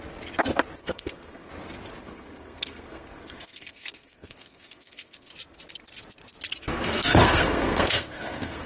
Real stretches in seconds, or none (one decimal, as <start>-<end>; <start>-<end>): 0.0-0.8; 1.5-2.0; 5.3-6.7